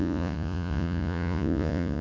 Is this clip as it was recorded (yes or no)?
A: no